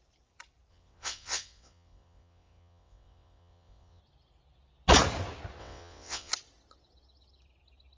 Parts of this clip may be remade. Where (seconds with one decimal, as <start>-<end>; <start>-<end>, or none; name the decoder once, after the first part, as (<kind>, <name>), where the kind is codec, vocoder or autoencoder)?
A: 0.7-4.0 (vocoder, WaveNeXt); 5.6-6.3